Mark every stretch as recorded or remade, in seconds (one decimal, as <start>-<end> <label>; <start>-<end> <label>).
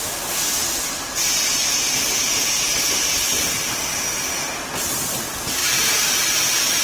0.0-6.8 recorded